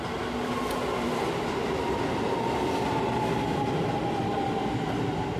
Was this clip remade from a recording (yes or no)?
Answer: no